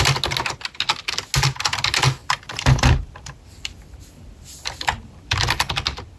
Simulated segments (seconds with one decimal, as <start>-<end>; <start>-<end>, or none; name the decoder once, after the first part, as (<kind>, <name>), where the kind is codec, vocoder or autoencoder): 2.2-5.7 (vocoder, BigVGAN v2)

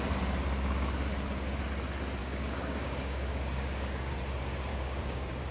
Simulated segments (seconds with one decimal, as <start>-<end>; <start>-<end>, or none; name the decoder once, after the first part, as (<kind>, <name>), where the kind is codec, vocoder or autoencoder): 2.2-4.1 (codec, DAC); 4.7-5.5

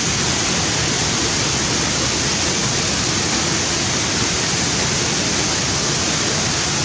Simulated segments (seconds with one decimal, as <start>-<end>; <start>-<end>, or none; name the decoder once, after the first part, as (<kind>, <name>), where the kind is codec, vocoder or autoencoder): none

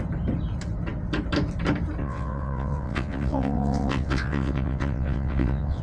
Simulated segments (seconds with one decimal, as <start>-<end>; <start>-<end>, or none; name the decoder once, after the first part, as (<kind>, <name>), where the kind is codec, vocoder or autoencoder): 2.0-5.8 (vocoder, WaveNeXt)